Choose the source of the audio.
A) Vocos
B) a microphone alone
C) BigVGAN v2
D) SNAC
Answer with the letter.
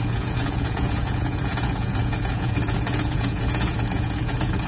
A